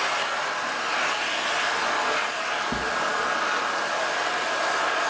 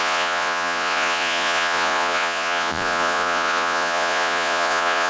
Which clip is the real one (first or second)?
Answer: first